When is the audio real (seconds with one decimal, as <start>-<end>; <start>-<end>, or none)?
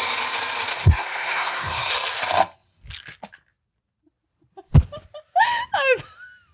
0.0-0.7; 1.9-6.5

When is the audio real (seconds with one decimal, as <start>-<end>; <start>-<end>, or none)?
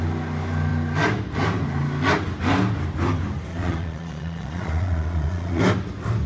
0.0-3.5; 5.6-6.3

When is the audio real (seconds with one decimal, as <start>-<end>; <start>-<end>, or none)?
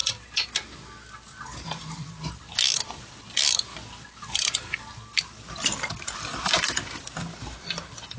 0.5-3.7; 4.7-8.2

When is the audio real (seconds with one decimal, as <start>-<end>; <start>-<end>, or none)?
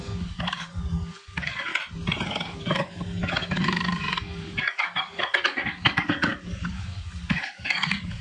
1.7-2.3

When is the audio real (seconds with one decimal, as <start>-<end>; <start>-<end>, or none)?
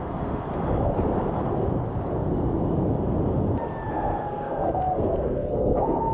0.5-3.9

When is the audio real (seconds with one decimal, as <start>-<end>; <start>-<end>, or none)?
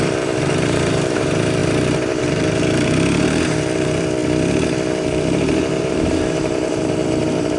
4.2-4.9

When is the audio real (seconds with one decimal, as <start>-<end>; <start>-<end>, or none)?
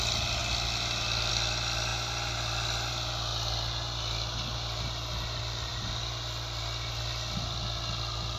0.0-8.4